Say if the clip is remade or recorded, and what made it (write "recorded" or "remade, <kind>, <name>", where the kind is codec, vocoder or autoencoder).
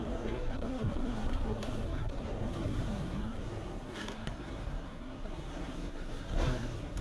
remade, codec, SNAC